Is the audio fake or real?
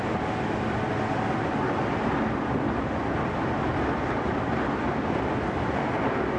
real